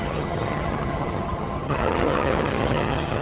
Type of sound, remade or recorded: remade